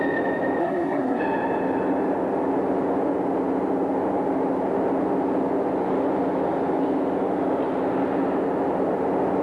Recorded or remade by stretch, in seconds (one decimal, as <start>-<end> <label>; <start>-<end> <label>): 0.0-0.6 recorded; 0.6-1.2 remade; 1.2-9.4 recorded